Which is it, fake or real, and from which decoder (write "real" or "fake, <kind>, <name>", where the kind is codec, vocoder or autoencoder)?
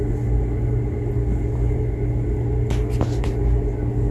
real